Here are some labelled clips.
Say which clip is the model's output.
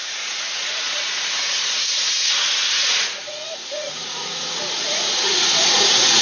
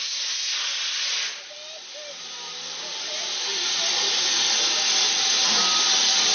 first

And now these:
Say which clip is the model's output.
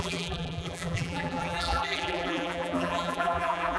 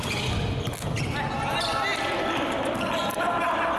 first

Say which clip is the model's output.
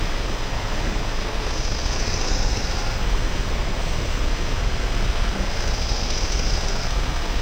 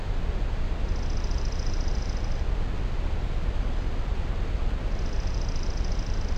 first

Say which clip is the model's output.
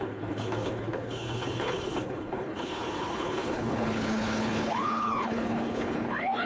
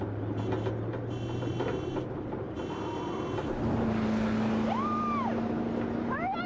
first